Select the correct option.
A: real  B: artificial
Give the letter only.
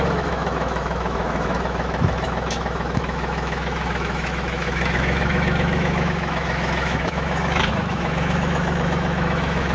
B